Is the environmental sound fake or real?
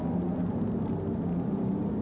real